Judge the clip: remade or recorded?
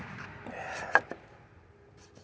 recorded